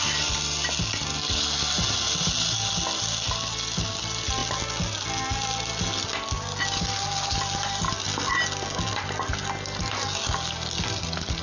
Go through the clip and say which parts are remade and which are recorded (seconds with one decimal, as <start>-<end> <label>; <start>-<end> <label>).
0.0-11.4 recorded